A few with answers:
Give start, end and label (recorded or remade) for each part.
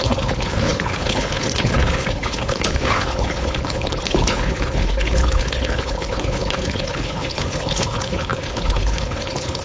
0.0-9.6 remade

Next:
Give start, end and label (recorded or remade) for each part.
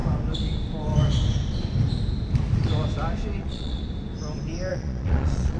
0.0-3.4 recorded; 3.4-3.8 remade; 3.8-4.7 recorded; 4.7-5.6 remade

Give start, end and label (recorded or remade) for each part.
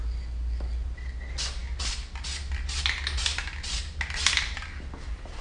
0.0-5.4 recorded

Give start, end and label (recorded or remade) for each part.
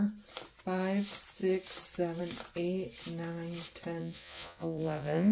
0.0-4.0 recorded; 4.0-5.3 remade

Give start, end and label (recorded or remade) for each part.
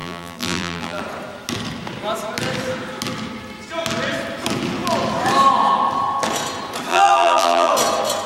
0.0-1.0 remade; 1.0-6.9 recorded; 6.9-7.7 remade; 7.7-8.3 recorded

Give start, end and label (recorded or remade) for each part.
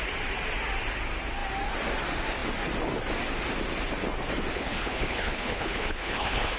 0.0-4.5 recorded; 4.5-6.6 remade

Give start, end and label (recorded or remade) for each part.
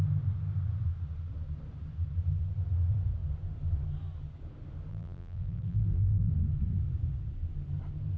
0.0-4.9 recorded; 4.9-6.3 remade; 6.3-8.2 recorded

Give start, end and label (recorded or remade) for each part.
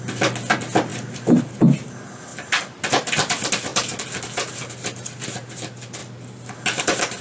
0.0-7.2 recorded